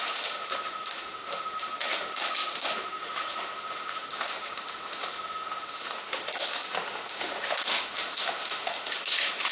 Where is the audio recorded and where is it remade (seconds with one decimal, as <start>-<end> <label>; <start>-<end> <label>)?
0.0-9.5 remade